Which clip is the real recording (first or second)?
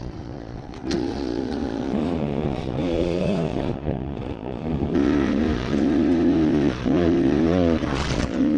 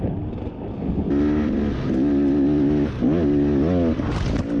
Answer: second